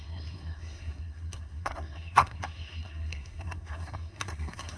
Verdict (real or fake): fake